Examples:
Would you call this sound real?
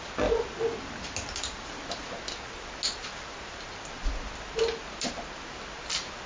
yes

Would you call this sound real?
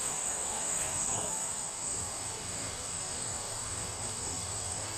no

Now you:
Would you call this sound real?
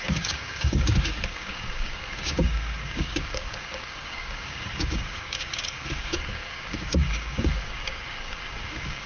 no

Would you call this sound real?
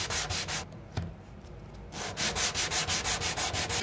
yes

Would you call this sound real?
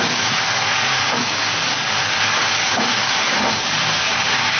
no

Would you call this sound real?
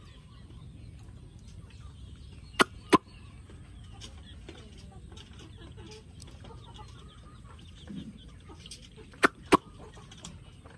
yes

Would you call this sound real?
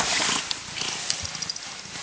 yes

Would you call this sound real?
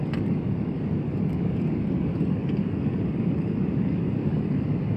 no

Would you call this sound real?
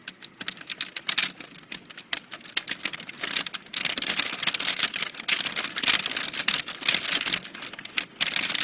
yes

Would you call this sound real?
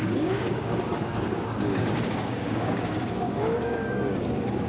no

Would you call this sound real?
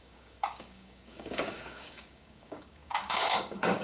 no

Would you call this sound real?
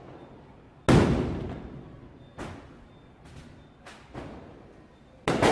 yes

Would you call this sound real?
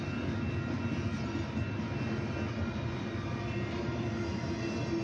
yes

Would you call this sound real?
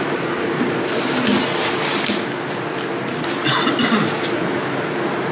yes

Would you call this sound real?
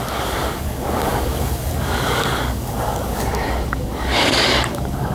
no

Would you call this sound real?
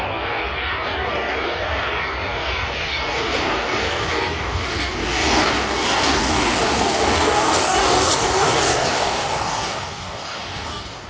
no